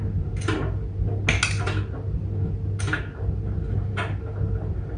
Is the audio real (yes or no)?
yes